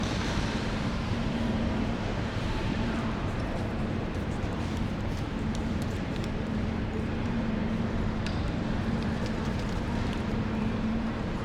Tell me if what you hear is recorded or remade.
remade